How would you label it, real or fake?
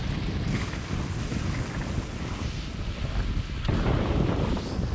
real